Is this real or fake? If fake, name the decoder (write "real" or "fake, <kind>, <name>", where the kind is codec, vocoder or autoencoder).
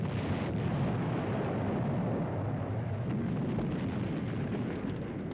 real